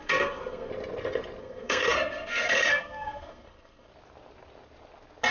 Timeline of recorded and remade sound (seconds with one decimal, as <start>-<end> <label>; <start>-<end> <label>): 0.0-0.7 remade; 0.7-1.4 recorded; 1.4-3.9 remade; 3.9-5.3 recorded

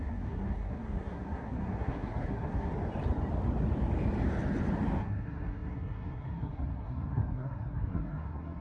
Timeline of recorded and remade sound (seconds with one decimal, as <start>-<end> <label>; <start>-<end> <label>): 0.0-2.7 remade; 2.7-5.0 recorded; 5.0-8.6 remade

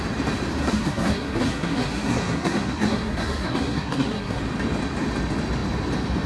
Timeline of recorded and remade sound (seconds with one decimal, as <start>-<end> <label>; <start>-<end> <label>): 0.0-0.6 recorded; 0.6-4.4 remade; 4.4-6.3 recorded

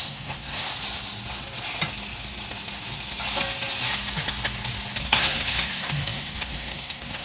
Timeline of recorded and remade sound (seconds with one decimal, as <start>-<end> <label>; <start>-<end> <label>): 0.0-0.7 remade; 0.7-5.0 recorded; 5.0-7.2 remade

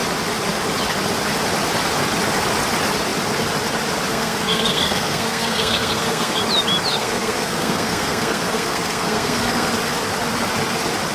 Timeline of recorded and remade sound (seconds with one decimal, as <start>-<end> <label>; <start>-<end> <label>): 0.0-4.1 recorded; 4.1-6.4 remade; 6.4-6.9 recorded; 6.9-9.7 remade; 9.7-11.1 recorded

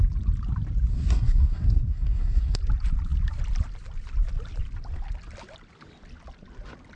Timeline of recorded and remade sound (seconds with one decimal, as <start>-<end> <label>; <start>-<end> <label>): 0.0-0.9 recorded; 0.9-2.6 remade; 2.6-7.0 recorded

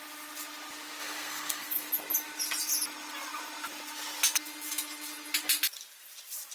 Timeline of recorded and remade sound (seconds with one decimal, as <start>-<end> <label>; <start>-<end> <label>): 0.0-1.0 recorded; 1.0-1.9 remade; 1.9-6.5 recorded

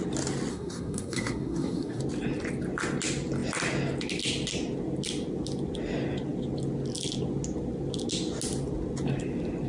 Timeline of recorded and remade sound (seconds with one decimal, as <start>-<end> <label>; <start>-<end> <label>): 0.0-0.5 recorded; 0.5-2.0 remade; 2.0-9.7 recorded